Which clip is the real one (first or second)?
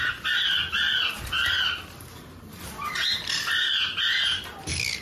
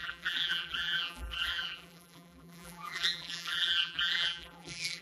first